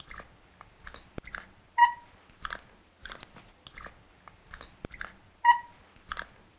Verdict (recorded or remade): recorded